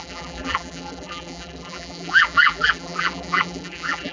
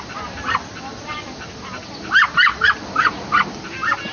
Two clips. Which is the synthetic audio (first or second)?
first